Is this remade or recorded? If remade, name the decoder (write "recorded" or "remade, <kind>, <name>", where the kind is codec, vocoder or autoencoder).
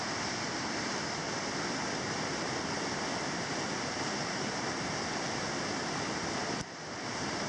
recorded